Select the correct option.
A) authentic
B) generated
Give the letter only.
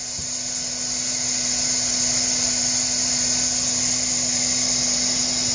A